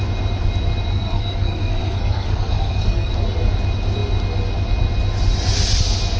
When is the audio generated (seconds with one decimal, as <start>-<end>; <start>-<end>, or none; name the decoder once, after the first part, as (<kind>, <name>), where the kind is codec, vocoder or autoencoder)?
0.9-3.1 (codec, SNAC)